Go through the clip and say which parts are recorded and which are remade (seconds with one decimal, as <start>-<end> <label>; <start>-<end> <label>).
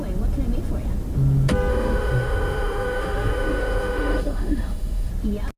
0.0-1.7 recorded; 1.7-5.1 remade; 5.1-5.6 recorded